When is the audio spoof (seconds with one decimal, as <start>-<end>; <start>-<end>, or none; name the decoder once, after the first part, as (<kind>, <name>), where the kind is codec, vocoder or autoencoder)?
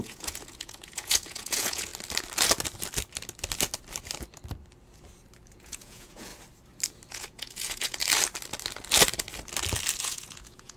0.0-1.9 (vocoder, Vocos); 5.5-6.3; 7.1-8.0; 10.0-10.8